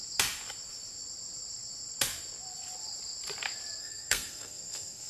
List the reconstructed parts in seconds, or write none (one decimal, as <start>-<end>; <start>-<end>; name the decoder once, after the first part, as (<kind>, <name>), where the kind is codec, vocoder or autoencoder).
3.8-5.1 (codec, SNAC)